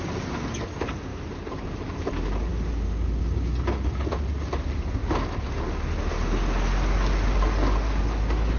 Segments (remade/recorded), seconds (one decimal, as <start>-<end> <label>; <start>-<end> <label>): 0.0-1.1 recorded; 1.1-2.1 remade; 2.1-8.6 recorded